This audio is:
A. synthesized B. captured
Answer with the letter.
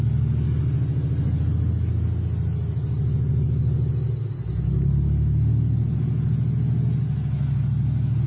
B